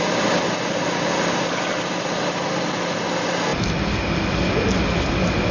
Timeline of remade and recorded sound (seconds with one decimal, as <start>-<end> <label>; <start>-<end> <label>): 0.0-5.5 recorded

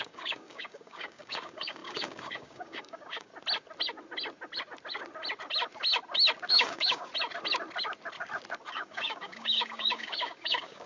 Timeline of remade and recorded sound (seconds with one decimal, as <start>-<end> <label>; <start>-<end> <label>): 0.0-3.3 remade; 3.3-6.5 recorded; 6.5-7.1 remade; 7.1-8.7 recorded; 8.7-10.9 remade

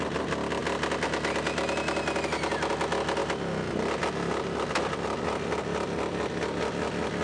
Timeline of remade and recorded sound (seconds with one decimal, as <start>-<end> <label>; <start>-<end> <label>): 0.0-7.2 recorded

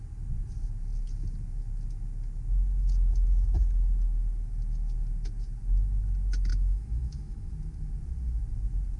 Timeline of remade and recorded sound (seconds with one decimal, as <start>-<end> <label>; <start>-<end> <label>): 0.0-6.5 recorded; 6.5-7.5 remade; 7.5-9.0 recorded